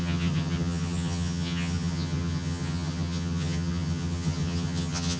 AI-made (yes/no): yes